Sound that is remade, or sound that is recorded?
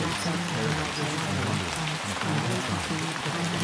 recorded